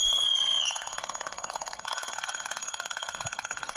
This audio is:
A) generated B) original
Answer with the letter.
A